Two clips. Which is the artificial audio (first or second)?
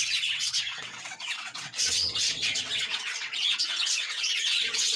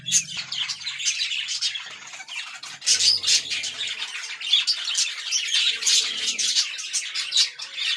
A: first